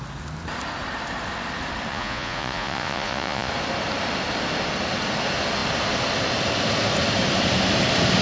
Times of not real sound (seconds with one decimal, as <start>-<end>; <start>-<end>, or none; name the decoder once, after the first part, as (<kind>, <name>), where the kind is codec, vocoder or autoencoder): 1.9-3.5 (vocoder, Vocos)